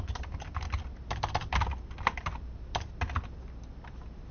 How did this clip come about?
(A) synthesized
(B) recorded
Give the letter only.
B